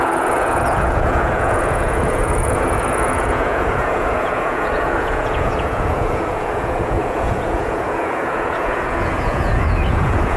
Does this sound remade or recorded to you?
remade